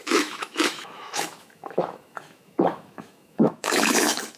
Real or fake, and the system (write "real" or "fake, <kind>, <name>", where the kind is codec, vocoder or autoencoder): fake, autoencoder, DAC-VAE